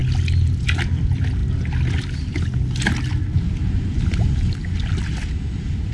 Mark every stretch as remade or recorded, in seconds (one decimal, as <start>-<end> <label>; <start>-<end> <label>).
0.0-5.9 recorded